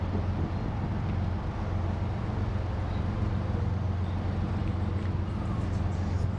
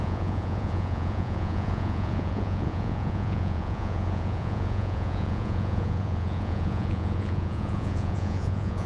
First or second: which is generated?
second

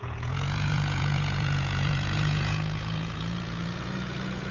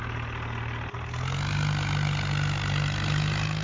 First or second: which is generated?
first